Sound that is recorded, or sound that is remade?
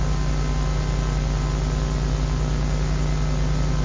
recorded